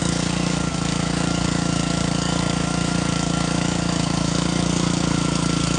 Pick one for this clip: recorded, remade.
remade